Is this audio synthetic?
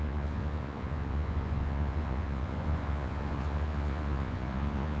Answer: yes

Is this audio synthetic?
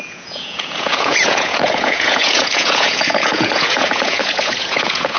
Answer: yes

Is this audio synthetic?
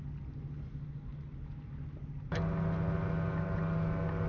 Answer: no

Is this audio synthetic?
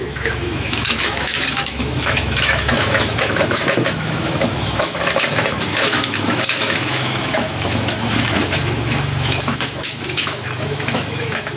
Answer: yes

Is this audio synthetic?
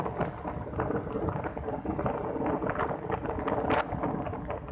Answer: no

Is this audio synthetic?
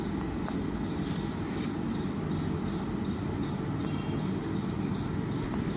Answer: no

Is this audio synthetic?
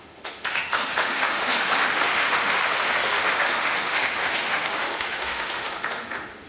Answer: yes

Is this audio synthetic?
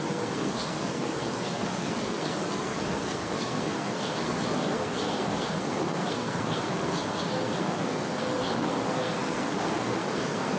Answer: yes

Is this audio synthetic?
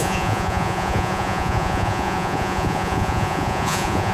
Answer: yes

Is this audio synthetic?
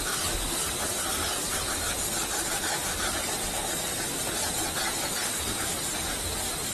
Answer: no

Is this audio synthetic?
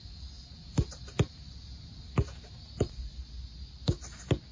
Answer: no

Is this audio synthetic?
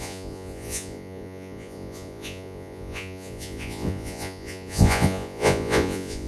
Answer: yes